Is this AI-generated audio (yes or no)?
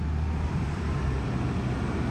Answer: no